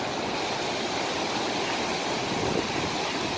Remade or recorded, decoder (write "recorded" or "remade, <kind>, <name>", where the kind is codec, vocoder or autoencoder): recorded